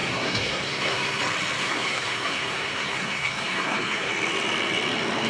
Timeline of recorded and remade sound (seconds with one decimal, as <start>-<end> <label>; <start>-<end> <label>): 0.0-1.2 remade; 1.2-1.6 recorded; 1.6-4.1 remade; 4.1-5.3 recorded